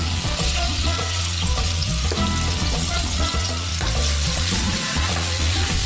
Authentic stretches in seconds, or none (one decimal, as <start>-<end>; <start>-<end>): 1.9-2.5; 3.7-4.3

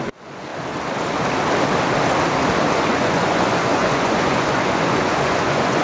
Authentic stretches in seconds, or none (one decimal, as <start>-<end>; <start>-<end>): 0.5-2.7

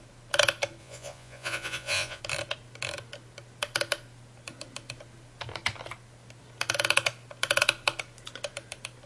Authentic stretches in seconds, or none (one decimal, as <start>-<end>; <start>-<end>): 0.0-0.8; 2.2-9.1

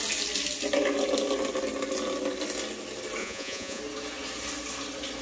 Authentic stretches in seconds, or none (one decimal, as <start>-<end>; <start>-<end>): 0.0-3.2; 3.8-5.2

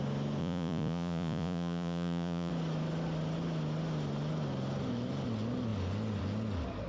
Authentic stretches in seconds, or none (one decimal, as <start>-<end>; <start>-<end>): 0.0-0.4; 2.5-6.9